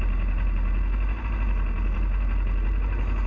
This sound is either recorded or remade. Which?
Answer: recorded